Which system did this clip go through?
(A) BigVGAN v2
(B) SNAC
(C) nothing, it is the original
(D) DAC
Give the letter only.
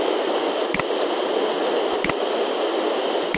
C